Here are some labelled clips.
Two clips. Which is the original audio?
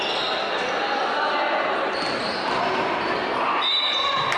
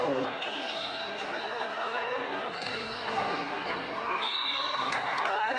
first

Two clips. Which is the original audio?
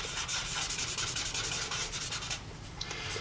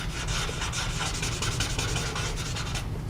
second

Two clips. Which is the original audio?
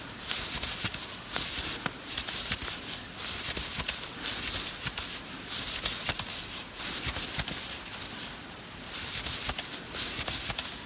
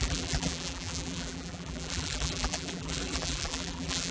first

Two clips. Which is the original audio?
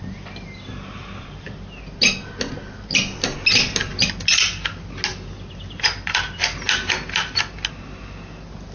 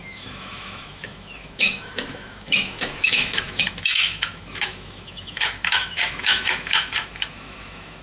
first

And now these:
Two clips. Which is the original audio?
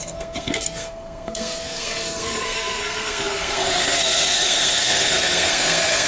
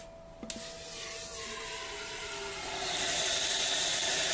second